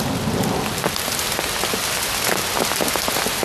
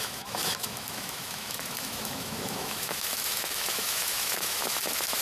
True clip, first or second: first